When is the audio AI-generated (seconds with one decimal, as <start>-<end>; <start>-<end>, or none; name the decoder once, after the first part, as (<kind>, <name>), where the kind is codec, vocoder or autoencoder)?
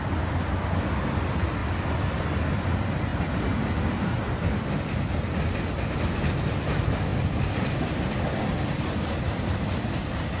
none